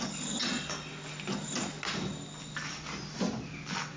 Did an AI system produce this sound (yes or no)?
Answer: no